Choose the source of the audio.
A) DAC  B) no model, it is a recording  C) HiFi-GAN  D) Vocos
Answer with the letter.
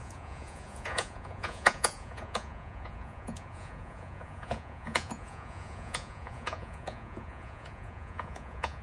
D